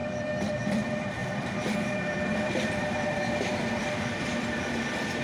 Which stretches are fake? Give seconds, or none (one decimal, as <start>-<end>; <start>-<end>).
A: 0.0-5.2